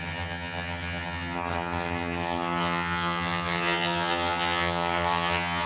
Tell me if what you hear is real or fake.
fake